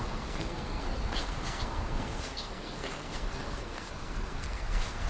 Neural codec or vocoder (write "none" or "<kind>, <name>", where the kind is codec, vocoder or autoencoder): codec, SNAC